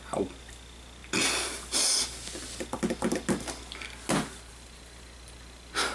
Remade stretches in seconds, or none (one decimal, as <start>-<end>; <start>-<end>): none